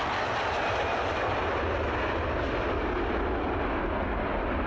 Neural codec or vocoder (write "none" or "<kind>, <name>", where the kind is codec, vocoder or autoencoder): none